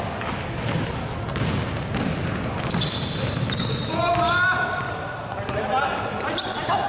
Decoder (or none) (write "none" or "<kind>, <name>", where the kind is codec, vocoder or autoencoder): none